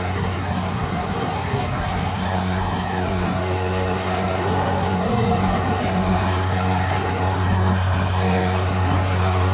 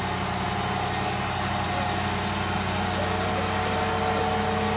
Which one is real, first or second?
second